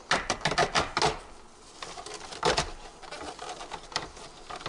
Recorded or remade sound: recorded